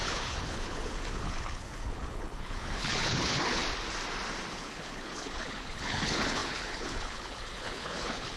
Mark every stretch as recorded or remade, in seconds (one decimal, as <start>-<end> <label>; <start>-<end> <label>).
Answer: 0.0-3.6 remade; 3.6-4.5 recorded; 4.5-8.4 remade